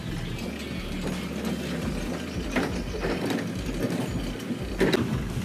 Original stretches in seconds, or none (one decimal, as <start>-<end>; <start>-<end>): 0.0-5.4